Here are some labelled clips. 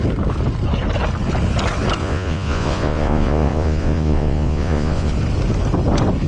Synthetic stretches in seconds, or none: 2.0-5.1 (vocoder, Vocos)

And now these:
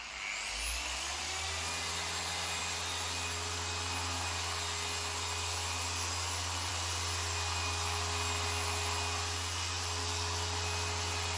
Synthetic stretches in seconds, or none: none

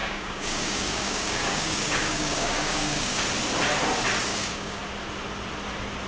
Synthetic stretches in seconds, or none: 0.0-3.2 (codec, DAC); 4.3-4.8

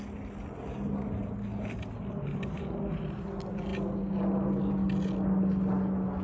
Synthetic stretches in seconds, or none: none

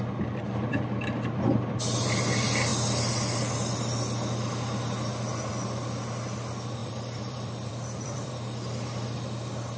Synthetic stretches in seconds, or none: 6.8-8.3 (vocoder, BigVGAN v2)

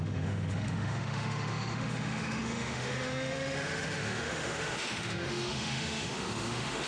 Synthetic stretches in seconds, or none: 0.0-6.9 (autoencoder, DAC-VAE)

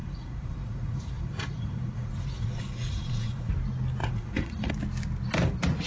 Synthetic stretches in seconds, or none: 0.0-3.5 (vocoder, Vocos); 4.0-4.7

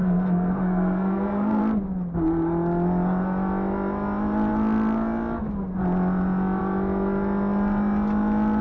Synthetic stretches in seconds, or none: 0.0-1.6 (codec, SNAC)